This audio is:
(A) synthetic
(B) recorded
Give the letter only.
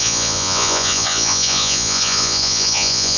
A